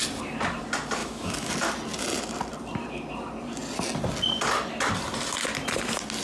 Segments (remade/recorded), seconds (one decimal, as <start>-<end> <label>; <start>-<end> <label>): 0.0-1.0 recorded; 1.0-1.5 remade; 1.5-6.2 recorded